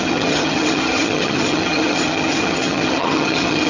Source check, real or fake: fake